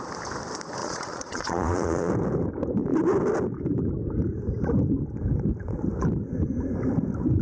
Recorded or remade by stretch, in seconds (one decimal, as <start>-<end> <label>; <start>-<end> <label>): 0.0-0.8 recorded; 0.8-2.1 remade; 2.1-7.4 recorded